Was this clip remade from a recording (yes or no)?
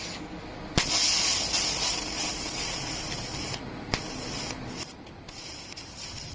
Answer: no